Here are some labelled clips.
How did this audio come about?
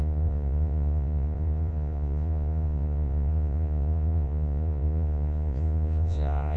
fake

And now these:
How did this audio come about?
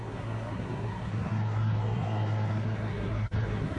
fake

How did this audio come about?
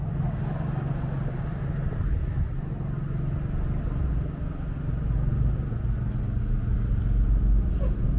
real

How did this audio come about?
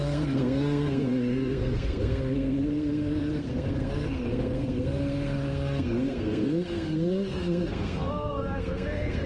fake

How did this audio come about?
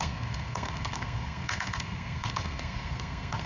fake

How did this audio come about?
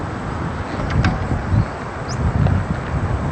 real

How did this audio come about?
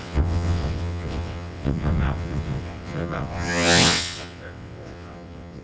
fake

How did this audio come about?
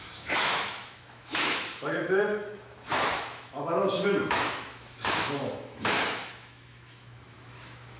fake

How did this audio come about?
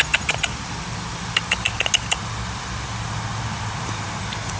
real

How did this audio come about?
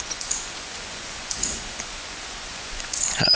fake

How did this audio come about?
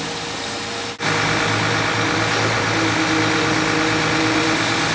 real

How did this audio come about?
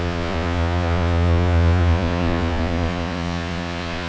fake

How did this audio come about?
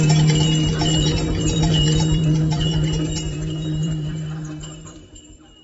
fake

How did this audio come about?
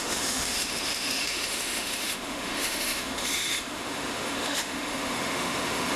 fake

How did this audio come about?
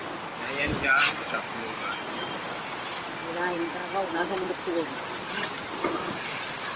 real